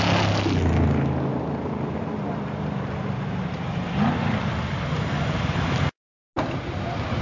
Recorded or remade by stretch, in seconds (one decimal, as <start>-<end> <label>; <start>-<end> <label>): 0.0-1.3 recorded; 1.3-5.6 remade; 5.6-7.2 recorded